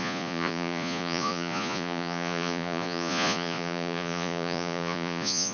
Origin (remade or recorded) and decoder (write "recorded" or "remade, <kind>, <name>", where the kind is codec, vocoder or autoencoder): remade, vocoder, Vocos